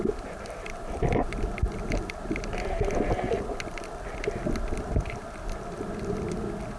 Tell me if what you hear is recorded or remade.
recorded